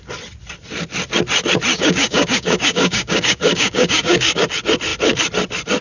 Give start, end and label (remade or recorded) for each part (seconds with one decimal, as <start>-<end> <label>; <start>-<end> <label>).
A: 0.0-1.7 recorded; 1.7-4.5 remade; 4.5-5.8 recorded

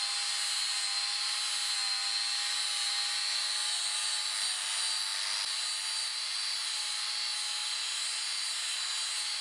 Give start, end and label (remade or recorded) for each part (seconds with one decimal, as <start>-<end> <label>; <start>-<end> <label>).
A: 0.0-9.4 recorded

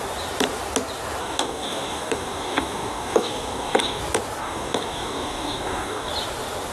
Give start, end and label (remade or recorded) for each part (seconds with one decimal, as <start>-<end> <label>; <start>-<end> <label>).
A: 0.0-1.2 recorded; 1.2-4.0 remade; 4.0-4.4 recorded; 4.4-6.1 remade; 6.1-6.7 recorded

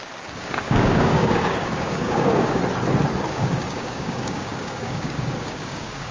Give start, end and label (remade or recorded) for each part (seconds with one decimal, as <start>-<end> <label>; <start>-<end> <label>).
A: 0.0-2.6 remade; 2.6-3.3 recorded; 3.3-6.1 remade